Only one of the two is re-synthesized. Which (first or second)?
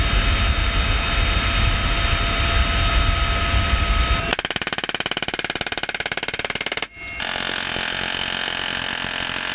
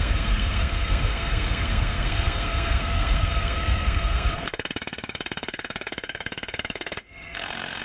second